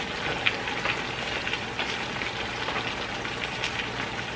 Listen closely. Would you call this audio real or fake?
real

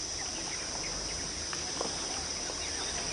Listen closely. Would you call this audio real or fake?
real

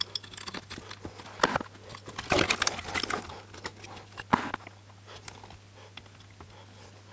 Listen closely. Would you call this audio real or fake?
real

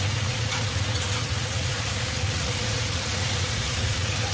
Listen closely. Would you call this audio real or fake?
fake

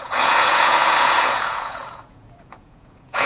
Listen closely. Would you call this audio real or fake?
fake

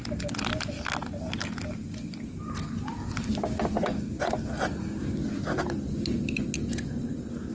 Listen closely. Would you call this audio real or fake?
real